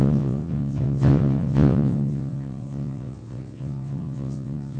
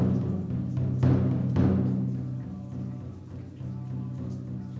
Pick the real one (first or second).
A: second